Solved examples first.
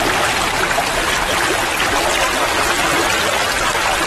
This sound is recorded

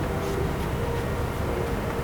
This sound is recorded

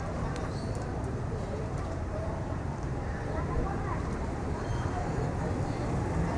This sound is remade